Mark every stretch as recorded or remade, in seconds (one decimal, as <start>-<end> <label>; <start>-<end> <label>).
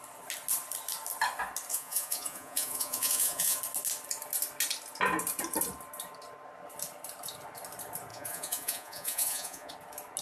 0.0-1.7 recorded; 1.7-3.6 remade; 3.6-8.1 recorded; 8.1-9.7 remade; 9.7-10.2 recorded